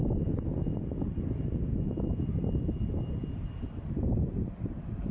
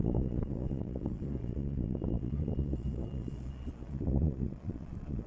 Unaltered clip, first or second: first